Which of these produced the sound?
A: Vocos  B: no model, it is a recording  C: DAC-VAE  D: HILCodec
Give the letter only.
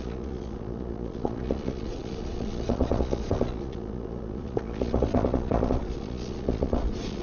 A